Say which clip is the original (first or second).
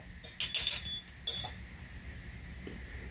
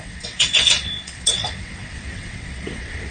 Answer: first